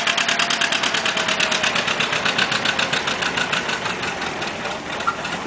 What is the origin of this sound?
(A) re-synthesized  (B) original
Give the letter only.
B